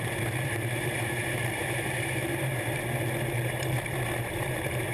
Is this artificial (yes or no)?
yes